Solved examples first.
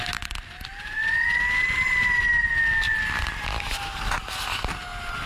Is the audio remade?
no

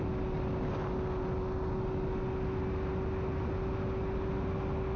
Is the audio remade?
no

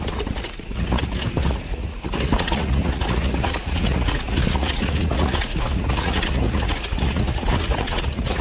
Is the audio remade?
yes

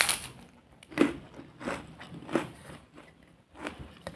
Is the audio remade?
no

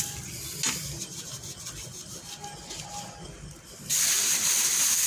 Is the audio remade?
no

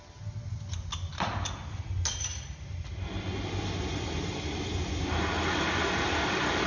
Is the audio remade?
no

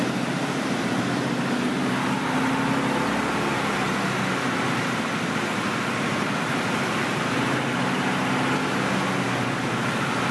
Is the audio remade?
no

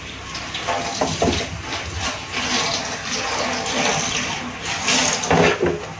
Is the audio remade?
no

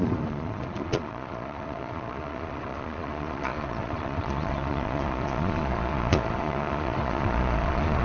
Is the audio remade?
yes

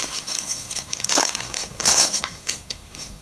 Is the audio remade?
yes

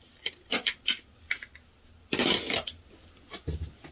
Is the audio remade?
no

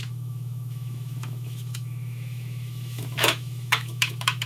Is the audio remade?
yes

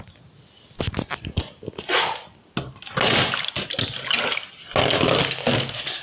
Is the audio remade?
no